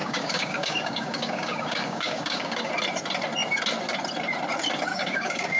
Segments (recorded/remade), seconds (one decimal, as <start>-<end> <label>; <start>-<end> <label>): 0.0-2.7 remade; 2.7-4.9 recorded; 4.9-5.6 remade